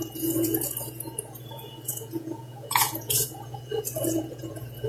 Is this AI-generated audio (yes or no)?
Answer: yes